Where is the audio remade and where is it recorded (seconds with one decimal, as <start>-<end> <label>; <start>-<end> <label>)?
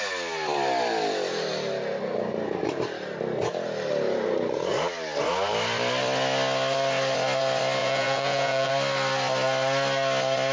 0.0-7.8 recorded; 7.8-8.7 remade; 8.7-10.5 recorded